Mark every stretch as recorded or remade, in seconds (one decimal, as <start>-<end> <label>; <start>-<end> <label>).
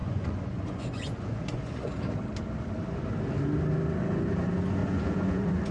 0.0-2.0 remade; 2.0-4.8 recorded; 4.8-5.7 remade